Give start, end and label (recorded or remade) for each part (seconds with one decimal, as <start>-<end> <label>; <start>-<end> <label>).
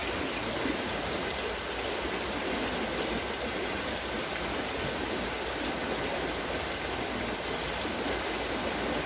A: 0.0-9.1 recorded